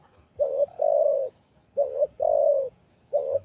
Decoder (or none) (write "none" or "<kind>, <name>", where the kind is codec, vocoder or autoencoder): codec, DAC